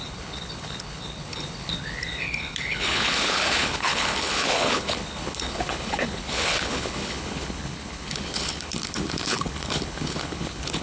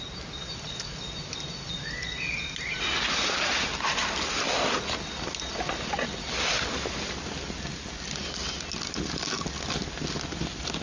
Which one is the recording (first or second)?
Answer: second